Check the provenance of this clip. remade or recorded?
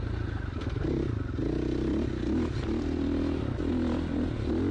recorded